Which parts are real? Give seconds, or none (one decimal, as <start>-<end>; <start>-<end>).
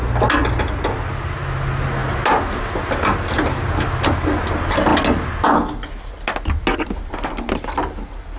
0.0-8.4